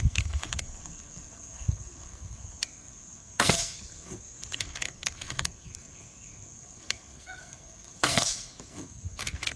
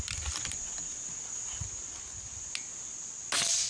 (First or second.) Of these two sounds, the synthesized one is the first